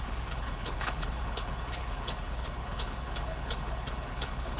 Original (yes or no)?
no